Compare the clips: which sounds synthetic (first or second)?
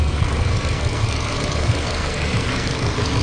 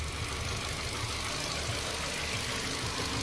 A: first